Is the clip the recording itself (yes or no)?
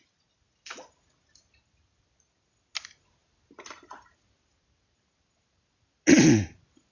yes